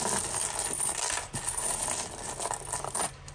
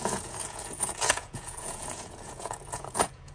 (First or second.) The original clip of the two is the first